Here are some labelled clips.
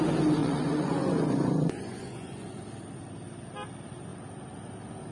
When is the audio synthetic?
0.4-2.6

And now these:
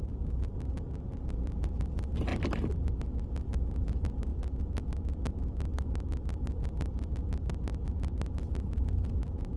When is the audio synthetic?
none

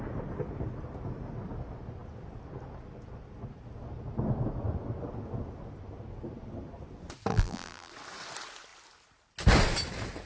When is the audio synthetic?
7.3-7.9

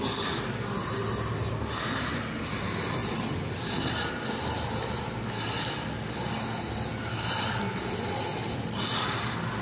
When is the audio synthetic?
none

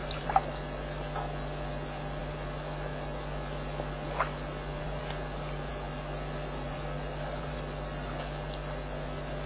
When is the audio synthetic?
none

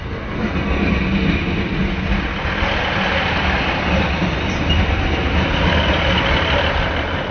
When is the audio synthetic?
4.2-5.4

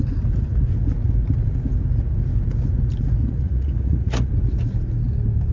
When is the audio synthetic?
3.2-4.3